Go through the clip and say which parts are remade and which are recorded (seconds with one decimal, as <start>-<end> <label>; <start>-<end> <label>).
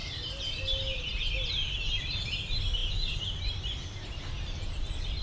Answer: 0.0-1.3 remade; 1.3-5.2 recorded